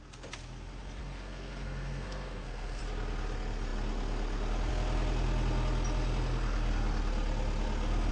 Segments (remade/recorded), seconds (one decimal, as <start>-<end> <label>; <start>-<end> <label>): 0.0-1.0 recorded; 1.0-2.8 remade; 2.8-8.1 recorded